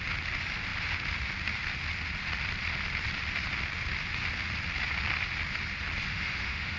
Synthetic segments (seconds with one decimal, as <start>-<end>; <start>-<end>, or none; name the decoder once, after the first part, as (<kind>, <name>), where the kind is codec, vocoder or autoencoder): 6.1-6.8 (autoencoder, DAC-VAE)